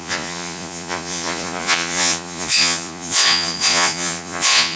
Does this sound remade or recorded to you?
remade